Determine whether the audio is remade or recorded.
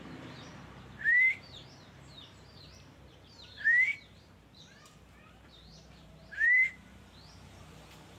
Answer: remade